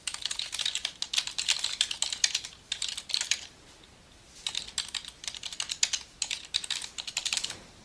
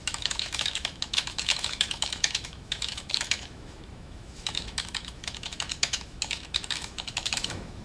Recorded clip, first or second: first